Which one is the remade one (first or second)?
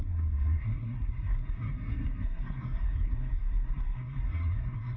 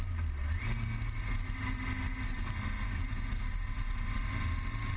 first